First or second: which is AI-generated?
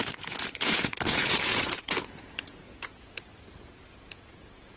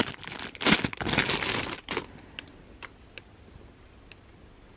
first